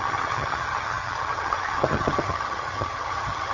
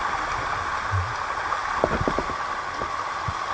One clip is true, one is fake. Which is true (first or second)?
second